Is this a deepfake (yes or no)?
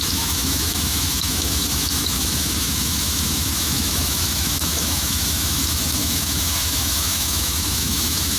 yes